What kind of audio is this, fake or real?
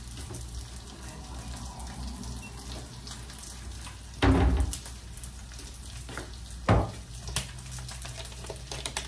real